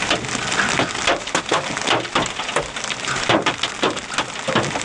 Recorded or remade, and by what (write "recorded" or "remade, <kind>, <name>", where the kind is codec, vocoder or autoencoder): recorded